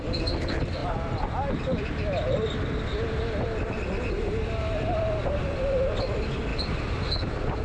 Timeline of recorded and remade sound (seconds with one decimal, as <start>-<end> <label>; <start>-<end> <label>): 0.0-6.5 recorded; 6.5-7.0 remade; 7.0-7.6 recorded